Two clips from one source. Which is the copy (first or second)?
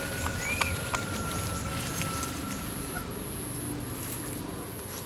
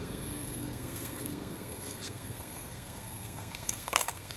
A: second